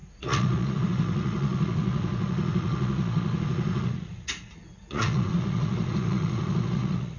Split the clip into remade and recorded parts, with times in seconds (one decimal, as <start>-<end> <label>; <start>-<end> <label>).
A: 0.0-7.2 remade